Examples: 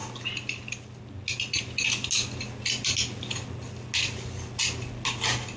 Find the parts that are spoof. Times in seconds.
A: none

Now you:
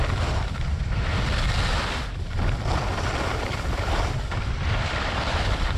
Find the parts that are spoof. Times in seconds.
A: 2.9-5.8 (vocoder, BigVGAN v2)

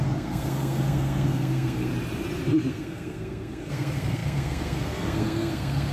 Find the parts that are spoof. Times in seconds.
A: 0.0-1.9 (codec, SNAC); 2.7-5.9

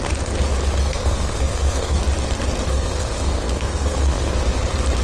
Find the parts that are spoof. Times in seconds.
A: 0.8-2.0 (codec, SNAC); 2.7-4.3

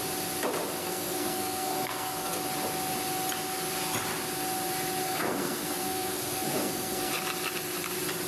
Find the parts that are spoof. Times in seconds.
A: 0.8-2.3 (codec, SNAC); 5.0-7.1